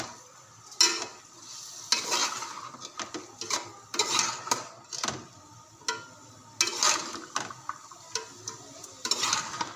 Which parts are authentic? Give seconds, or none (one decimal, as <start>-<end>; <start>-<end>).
0.0-9.8